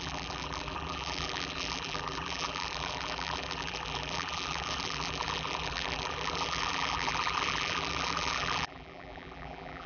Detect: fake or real fake